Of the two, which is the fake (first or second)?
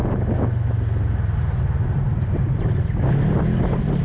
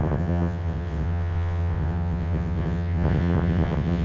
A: second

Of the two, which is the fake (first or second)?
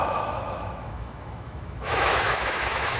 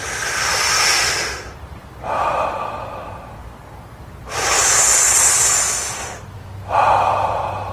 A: first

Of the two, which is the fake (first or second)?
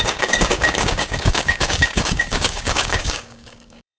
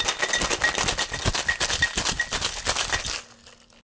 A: first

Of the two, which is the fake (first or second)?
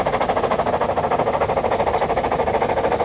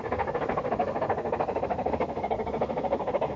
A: second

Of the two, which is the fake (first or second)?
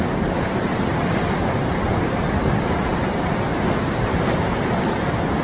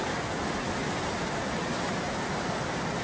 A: first